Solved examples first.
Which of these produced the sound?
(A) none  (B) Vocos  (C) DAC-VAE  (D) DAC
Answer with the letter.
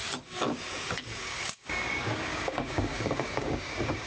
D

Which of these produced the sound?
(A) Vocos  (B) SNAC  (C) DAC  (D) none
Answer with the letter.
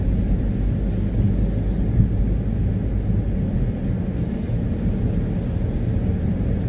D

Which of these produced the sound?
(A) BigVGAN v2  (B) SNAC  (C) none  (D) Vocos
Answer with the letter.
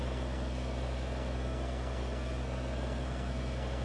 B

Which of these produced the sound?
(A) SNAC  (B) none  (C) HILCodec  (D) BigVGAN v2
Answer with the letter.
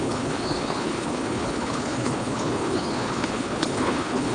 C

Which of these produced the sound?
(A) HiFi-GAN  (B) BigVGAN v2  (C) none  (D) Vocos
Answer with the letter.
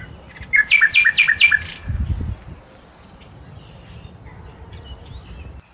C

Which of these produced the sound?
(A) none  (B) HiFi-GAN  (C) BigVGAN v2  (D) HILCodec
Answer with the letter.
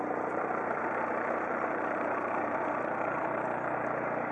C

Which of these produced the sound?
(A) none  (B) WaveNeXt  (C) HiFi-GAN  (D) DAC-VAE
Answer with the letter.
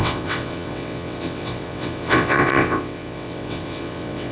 B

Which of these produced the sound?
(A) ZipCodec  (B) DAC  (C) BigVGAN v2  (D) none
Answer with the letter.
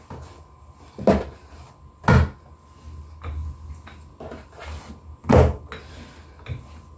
D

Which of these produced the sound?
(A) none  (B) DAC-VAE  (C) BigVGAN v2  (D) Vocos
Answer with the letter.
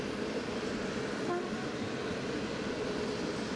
A